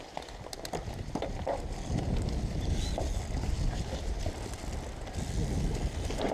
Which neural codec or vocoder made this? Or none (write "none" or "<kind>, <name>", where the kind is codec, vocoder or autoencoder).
none